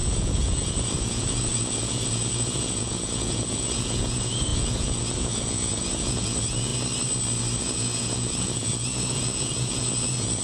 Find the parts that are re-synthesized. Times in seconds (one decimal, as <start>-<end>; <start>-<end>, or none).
0.0-6.7; 7.6-10.4